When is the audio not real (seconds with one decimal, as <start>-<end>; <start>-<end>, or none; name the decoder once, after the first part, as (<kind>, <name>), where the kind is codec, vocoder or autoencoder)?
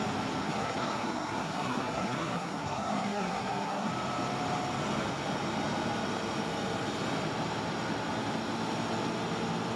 0.4-3.9 (codec, SNAC)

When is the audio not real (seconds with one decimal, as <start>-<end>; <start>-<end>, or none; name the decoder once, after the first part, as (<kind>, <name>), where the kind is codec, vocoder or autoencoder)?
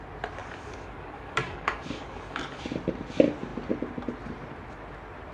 0.4-2.6 (codec, DAC)